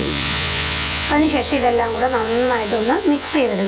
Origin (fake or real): fake